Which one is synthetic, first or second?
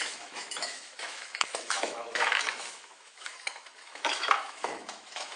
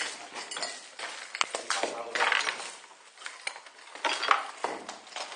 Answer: first